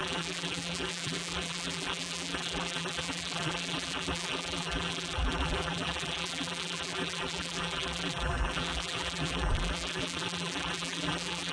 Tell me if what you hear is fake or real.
fake